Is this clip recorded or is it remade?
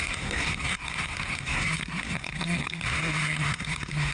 remade